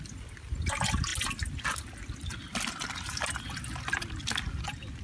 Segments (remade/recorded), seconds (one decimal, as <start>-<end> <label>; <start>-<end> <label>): 0.0-5.0 recorded